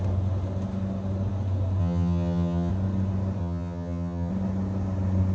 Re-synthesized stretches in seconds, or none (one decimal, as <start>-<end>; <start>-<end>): 1.8-2.7; 3.4-4.3